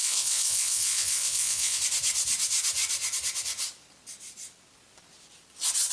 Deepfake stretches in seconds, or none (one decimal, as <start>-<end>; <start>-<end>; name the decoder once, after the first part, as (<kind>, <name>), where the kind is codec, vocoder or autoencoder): 0.0-1.8 (vocoder, WaveNeXt)